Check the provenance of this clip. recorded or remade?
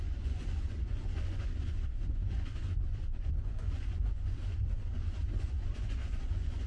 remade